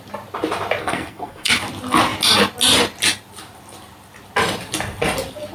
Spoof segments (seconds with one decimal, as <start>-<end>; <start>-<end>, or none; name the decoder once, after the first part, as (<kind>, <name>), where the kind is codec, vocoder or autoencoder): 0.8-1.5 (codec, SNAC)